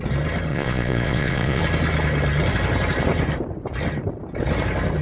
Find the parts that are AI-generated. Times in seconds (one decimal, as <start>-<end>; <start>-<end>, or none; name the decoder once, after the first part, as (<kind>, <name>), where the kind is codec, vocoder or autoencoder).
0.5-1.6 (vocoder, Vocos)